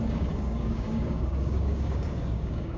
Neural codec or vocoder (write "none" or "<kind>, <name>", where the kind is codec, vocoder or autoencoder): codec, DAC